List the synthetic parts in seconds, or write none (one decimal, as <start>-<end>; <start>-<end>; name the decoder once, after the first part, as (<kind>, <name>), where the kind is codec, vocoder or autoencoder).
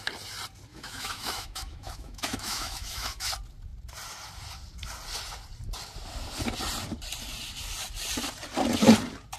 0.7-3.3 (autoencoder, DAC-VAE)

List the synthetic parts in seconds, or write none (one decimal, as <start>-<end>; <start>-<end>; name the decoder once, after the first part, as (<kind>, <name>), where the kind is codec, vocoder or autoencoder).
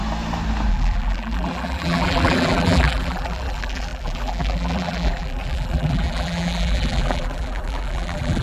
0.7-8.4 (vocoder, BigVGAN v2)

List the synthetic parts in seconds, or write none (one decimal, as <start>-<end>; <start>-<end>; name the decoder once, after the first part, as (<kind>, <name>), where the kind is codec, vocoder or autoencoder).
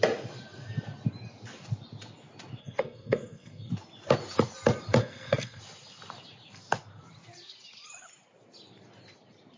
2.6-3.7 (codec, SNAC); 5.0-5.6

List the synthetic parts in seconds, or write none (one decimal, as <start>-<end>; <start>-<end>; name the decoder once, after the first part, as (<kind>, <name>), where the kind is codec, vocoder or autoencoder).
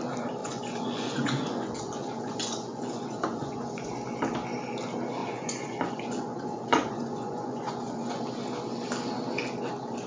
0.4-3.9 (vocoder, Vocos); 5.2-8.2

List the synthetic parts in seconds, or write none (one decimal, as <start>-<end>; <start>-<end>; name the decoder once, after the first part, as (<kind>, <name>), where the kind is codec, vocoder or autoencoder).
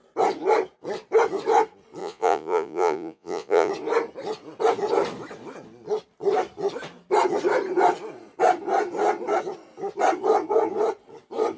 2.0-3.7 (vocoder, Vocos)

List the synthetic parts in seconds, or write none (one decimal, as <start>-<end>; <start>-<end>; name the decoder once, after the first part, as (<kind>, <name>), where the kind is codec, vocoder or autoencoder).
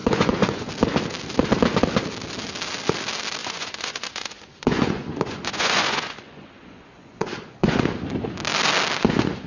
0.0-0.7 (vocoder, Vocos); 3.4-7.8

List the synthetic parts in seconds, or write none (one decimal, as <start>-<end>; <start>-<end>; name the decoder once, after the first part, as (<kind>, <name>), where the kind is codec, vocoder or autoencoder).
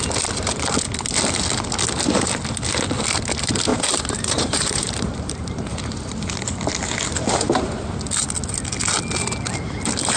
3.7-5.4 (vocoder, BigVGAN v2)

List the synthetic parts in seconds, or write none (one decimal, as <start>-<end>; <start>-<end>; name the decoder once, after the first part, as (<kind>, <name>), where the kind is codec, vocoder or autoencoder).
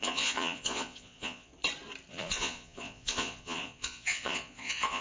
0.0-1.5 (vocoder, Vocos); 2.1-5.0